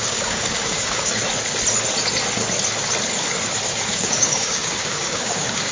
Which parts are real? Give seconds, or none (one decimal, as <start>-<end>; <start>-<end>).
1.2-3.9